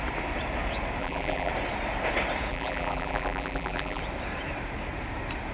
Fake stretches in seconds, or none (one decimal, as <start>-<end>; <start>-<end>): 1.0-1.5; 2.5-4.0